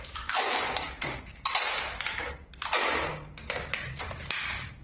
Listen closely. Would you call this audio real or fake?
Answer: real